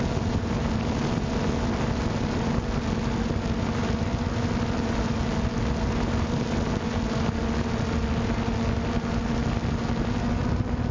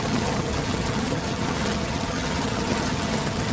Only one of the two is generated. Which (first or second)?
second